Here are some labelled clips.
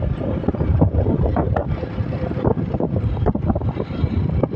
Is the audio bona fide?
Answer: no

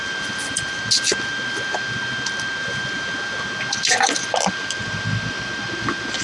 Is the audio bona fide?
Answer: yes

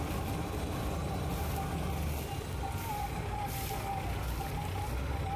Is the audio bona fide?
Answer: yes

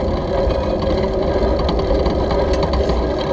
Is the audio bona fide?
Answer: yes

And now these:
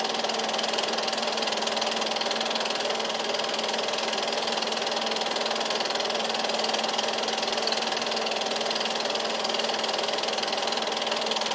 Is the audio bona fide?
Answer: yes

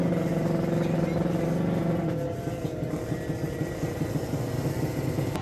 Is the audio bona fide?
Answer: yes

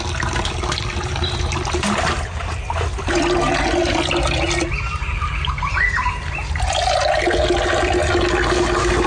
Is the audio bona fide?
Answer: yes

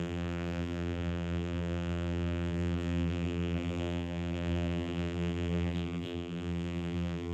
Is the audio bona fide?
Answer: no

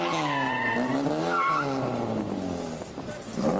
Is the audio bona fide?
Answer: yes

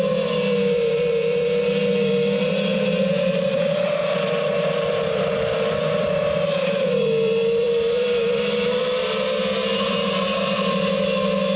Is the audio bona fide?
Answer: no